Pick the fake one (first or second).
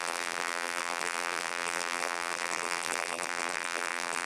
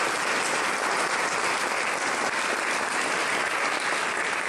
first